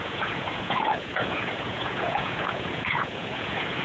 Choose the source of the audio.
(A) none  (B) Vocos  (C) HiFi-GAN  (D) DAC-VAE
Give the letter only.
B